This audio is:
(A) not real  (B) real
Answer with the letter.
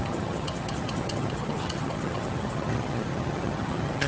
A